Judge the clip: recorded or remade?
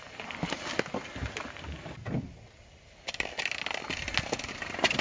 recorded